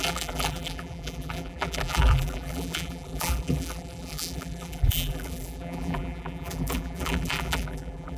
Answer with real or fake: fake